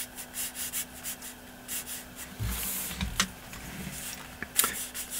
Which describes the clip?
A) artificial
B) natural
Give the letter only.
B